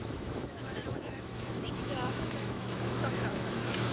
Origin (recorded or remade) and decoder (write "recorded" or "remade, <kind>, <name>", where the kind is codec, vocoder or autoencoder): remade, autoencoder, DAC-VAE